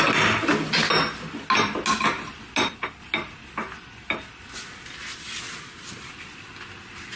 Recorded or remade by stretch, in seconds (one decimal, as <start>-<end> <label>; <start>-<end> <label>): 0.0-7.2 recorded